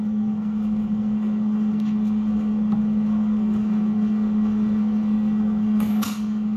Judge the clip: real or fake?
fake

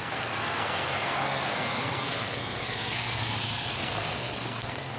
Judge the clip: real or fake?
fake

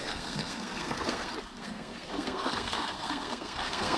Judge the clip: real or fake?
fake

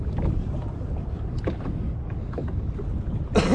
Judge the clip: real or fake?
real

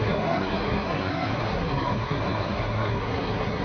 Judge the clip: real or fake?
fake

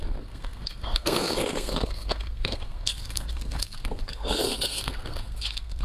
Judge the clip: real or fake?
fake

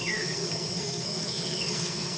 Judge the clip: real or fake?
fake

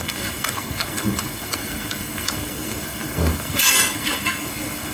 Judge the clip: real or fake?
fake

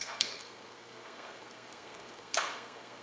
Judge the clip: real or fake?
fake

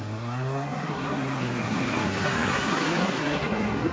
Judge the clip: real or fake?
fake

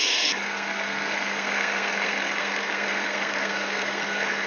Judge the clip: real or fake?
fake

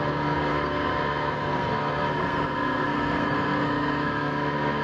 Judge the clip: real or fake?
fake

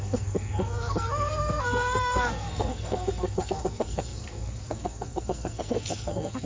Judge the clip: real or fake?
fake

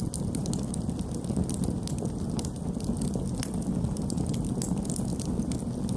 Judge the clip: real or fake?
real